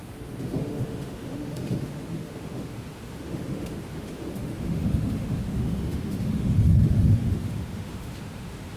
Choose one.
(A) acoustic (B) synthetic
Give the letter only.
B